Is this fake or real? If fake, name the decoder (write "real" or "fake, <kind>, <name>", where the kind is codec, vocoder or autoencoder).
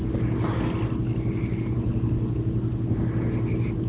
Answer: real